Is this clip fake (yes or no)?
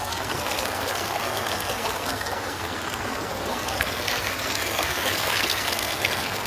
yes